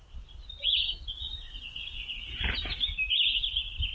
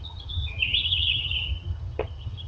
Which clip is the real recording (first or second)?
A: first